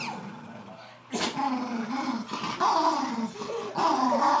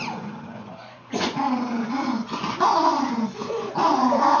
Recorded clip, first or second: first